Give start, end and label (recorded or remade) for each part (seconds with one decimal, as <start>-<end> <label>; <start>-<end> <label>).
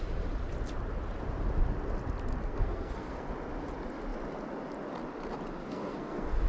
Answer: 0.0-2.4 recorded; 2.4-3.3 remade; 3.3-5.6 recorded; 5.6-6.5 remade